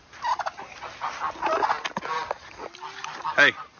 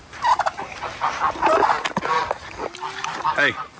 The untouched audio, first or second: first